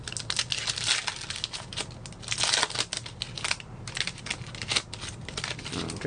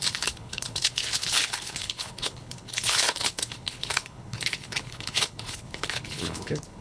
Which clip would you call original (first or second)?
first